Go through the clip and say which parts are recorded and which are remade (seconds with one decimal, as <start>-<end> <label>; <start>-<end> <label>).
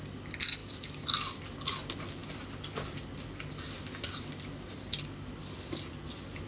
0.0-6.5 recorded